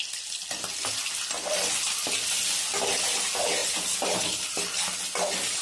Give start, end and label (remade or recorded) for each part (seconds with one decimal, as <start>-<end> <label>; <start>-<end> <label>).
0.0-3.6 recorded; 3.6-4.6 remade; 4.6-5.6 recorded